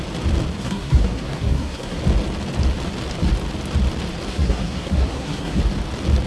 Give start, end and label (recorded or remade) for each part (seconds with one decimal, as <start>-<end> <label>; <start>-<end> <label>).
0.0-0.6 recorded; 0.6-2.0 remade; 2.0-4.3 recorded; 4.3-5.6 remade; 5.6-6.3 recorded